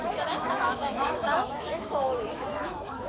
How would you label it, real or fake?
fake